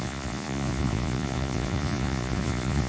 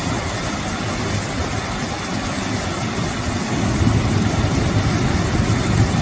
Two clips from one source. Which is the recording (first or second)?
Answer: second